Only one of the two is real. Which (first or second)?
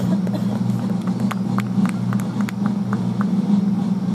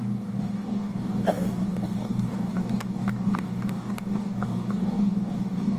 first